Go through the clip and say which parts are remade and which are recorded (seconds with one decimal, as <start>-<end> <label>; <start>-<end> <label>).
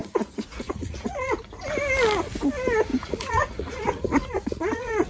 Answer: 0.0-1.4 remade; 1.4-2.9 recorded; 2.9-5.1 remade